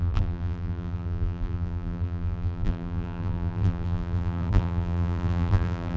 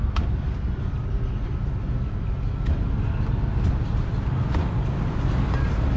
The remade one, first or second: first